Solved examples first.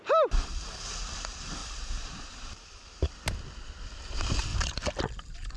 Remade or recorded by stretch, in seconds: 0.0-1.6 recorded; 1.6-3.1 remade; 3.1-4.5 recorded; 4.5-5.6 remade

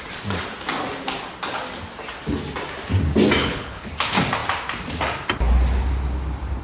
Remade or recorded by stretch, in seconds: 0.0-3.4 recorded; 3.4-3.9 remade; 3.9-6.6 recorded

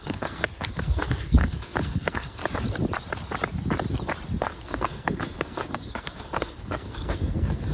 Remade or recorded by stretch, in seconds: 0.0-2.4 remade; 2.4-4.4 recorded; 4.4-7.7 remade

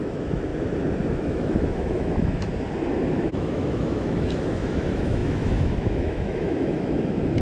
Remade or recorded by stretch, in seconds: 0.0-0.5 remade; 0.5-1.1 recorded; 1.1-2.5 remade; 2.5-3.1 recorded; 3.1-7.4 remade

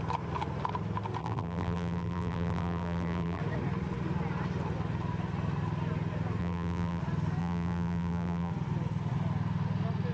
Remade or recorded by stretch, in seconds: 0.0-1.2 recorded; 1.2-3.4 remade; 3.4-6.4 recorded; 6.4-7.0 remade; 7.0-7.4 recorded; 7.4-8.5 remade; 8.5-10.1 recorded

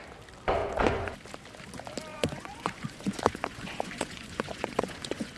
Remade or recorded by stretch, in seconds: 0.0-0.6 recorded; 0.6-1.2 remade; 1.2-2.1 recorded; 2.1-5.4 remade

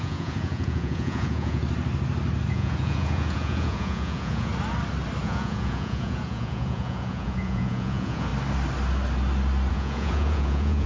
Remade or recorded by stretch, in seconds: 0.0-1.6 remade; 1.6-2.5 recorded; 2.5-4.5 remade; 4.5-5.2 recorded; 5.2-8.3 remade; 8.3-9.7 recorded; 9.7-10.9 remade